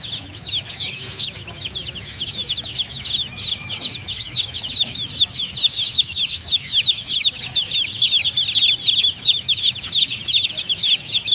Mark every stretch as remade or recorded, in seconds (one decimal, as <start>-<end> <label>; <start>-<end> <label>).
0.0-8.2 remade; 8.2-9.0 recorded; 9.0-11.3 remade